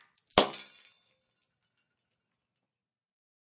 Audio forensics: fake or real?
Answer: real